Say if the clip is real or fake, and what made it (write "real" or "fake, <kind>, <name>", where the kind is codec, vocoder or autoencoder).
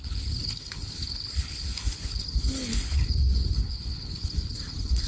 fake, codec, HILCodec